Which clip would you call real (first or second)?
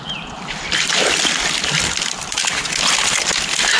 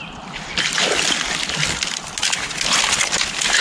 second